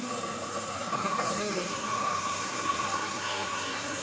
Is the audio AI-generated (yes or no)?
yes